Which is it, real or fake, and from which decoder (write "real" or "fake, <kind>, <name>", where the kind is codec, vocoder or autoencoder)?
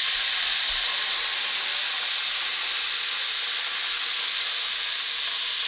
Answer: real